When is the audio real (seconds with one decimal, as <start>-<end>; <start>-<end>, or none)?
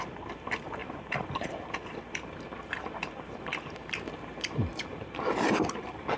none